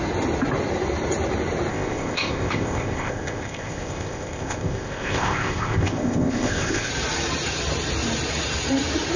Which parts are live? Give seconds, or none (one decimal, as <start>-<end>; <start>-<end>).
0.0-1.7; 6.9-9.2